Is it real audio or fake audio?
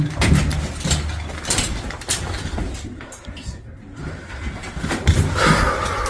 real